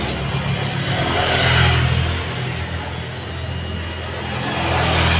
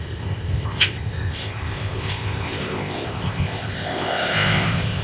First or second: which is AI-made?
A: second